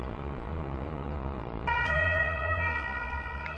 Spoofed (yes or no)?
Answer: yes